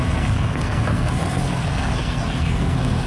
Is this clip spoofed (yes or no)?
yes